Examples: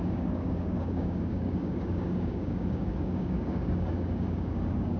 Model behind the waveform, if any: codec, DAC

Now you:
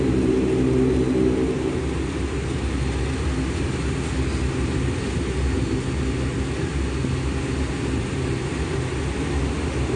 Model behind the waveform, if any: none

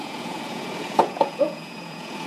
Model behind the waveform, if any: vocoder, Vocos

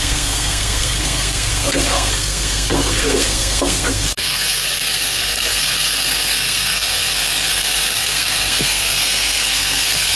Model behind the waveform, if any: codec, SNAC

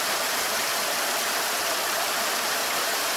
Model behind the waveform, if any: vocoder, BigVGAN v2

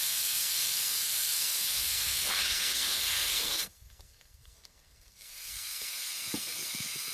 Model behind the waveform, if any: codec, SNAC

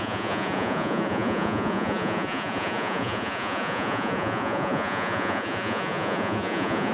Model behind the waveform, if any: vocoder, Vocos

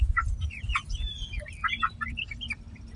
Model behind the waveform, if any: vocoder, BigVGAN v2